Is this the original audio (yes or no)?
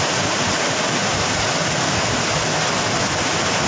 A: yes